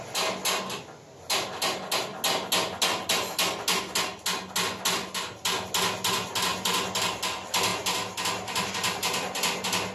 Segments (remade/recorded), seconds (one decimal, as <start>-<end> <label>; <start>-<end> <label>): 0.0-9.9 recorded